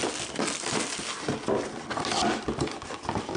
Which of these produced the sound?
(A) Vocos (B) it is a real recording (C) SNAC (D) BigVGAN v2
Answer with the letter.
B